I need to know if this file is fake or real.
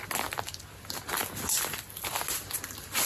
real